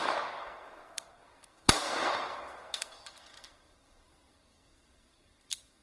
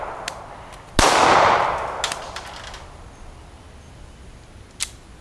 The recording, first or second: second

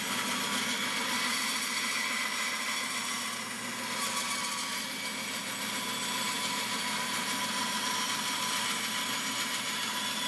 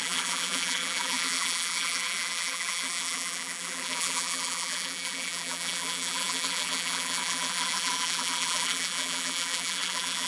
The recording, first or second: first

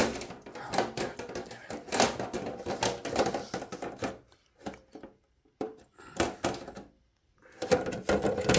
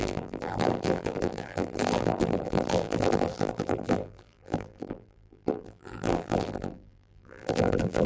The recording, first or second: first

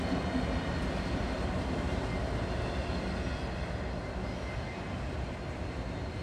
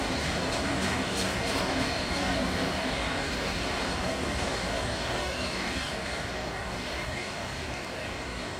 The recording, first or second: first